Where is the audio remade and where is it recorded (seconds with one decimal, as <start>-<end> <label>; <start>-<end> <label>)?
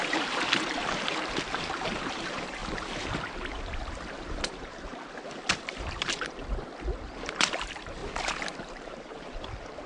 0.0-2.6 remade; 2.6-3.5 recorded; 3.5-4.9 remade; 4.9-5.5 recorded; 5.5-6.4 remade; 6.4-7.4 recorded; 7.4-8.0 remade; 8.0-8.6 recorded; 8.6-9.9 remade